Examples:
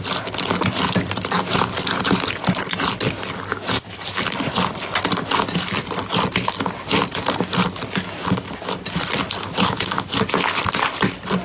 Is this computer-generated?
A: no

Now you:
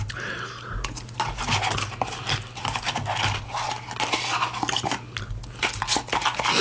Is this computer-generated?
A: no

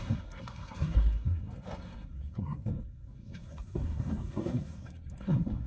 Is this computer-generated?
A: yes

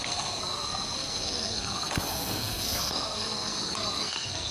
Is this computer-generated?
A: yes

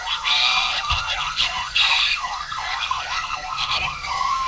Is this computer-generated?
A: yes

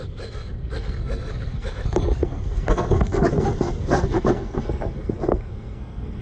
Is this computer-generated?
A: yes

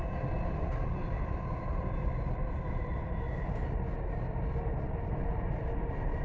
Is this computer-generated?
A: no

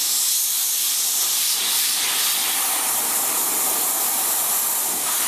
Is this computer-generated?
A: no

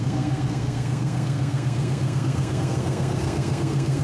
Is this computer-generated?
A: yes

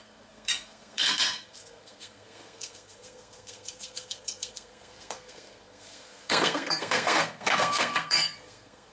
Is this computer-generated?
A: yes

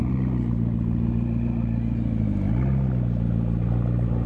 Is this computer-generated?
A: no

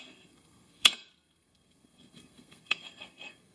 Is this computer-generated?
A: yes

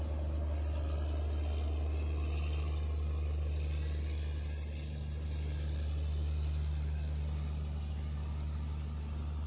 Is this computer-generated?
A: no